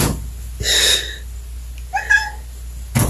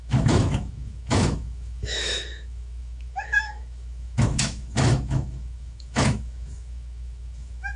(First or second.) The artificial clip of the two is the second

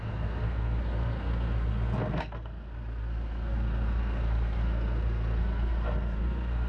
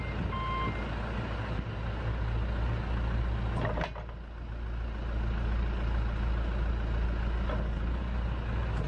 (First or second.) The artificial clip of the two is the first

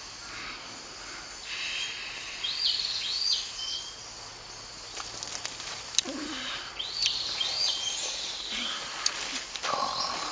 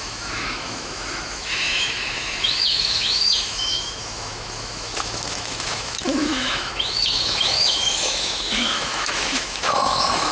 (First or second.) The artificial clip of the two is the second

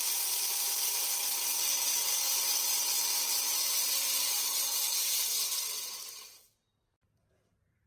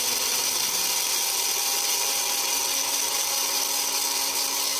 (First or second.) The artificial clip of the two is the first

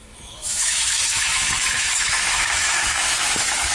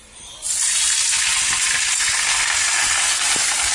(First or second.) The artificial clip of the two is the first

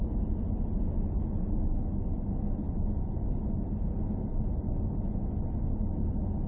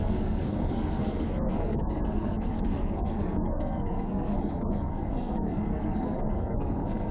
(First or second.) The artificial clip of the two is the second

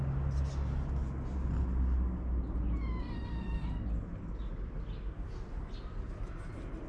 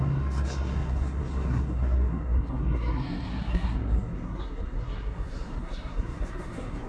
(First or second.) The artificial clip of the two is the second